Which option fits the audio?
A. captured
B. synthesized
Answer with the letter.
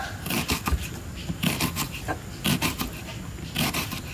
A